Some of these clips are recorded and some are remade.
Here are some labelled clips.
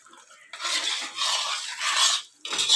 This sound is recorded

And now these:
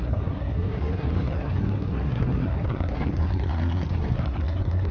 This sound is remade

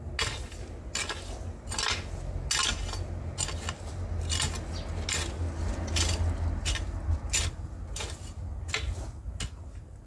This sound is recorded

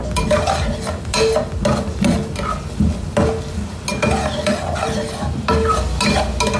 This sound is recorded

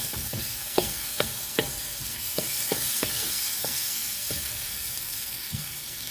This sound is remade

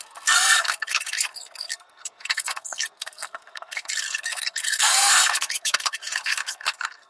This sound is remade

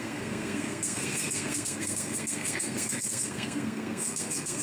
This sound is remade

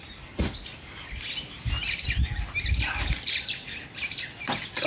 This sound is recorded